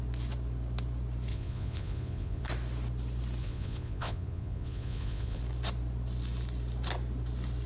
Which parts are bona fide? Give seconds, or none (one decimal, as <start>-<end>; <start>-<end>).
0.0-1.3; 2.4-3.4; 5.4-7.7

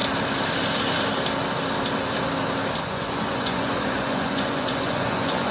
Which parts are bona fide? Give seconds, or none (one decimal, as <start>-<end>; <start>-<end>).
0.0-2.8

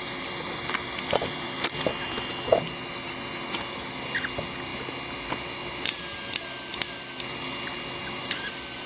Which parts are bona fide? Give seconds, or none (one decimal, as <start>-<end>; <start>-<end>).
0.0-8.9

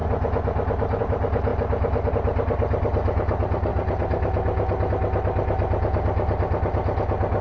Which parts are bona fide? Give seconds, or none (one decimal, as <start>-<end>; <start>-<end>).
0.0-7.4

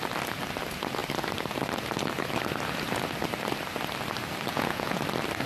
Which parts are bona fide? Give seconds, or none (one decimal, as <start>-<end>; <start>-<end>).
0.0-4.5; 5.0-5.5

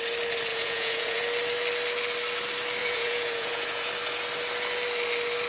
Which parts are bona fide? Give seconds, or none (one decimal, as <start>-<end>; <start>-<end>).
0.0-0.5; 1.2-2.8; 3.9-5.5

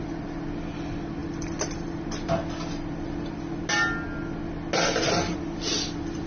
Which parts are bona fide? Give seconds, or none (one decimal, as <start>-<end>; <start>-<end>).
0.0-6.3